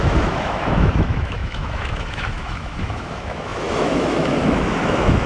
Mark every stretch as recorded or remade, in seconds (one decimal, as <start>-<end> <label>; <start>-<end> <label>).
0.0-5.3 remade